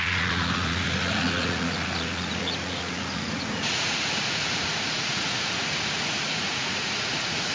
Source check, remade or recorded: remade